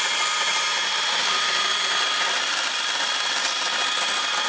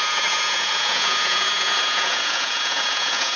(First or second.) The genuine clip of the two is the first